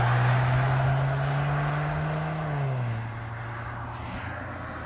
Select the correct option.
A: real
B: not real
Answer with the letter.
A